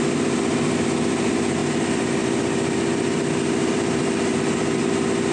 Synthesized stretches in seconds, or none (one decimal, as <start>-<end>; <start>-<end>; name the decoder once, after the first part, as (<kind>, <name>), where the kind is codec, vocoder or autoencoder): 1.6-4.8 (vocoder, BigVGAN v2)